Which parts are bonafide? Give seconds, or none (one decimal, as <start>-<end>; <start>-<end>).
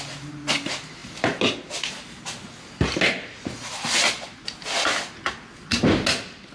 0.0-6.5